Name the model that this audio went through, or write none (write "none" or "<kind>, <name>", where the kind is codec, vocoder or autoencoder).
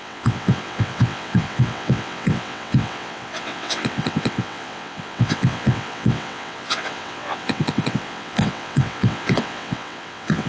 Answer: vocoder, WaveNeXt